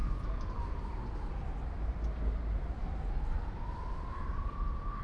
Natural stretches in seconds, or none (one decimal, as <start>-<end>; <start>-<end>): 0.0-5.0